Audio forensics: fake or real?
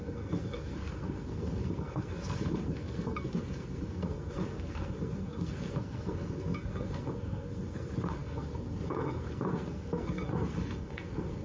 fake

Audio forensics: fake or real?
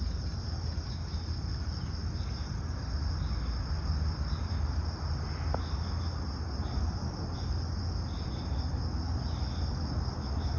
real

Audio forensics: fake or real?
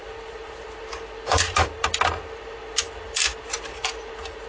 fake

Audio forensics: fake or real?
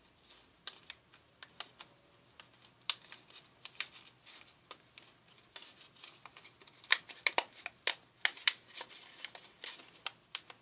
real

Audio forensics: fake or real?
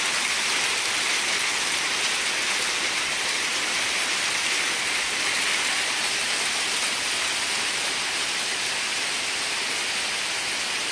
real